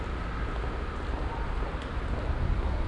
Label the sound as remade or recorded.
recorded